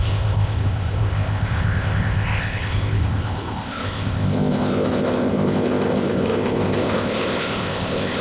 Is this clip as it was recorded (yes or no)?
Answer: no